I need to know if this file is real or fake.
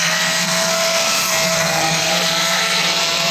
fake